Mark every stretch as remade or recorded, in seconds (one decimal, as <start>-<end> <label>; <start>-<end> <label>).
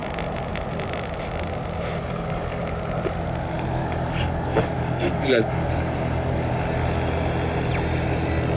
0.0-2.0 recorded; 2.0-2.6 remade; 2.6-3.8 recorded; 3.8-6.5 remade; 6.5-8.6 recorded